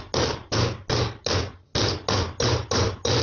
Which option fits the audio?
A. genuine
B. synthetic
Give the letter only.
A